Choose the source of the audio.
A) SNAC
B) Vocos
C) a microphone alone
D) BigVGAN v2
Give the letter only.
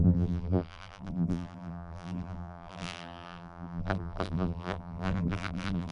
D